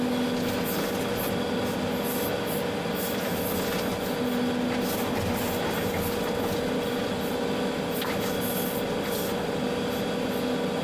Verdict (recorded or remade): recorded